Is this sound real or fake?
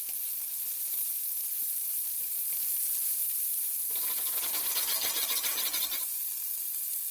real